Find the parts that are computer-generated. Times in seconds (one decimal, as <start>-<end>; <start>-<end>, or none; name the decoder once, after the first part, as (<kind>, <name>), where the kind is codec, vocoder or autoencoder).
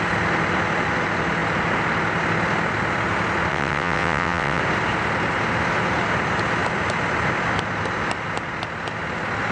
3.5-4.6 (vocoder, WaveNeXt)